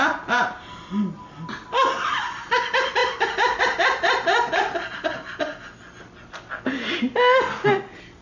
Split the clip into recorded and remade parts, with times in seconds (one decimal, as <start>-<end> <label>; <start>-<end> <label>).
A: 0.0-3.0 recorded; 3.0-3.6 remade; 3.6-8.2 recorded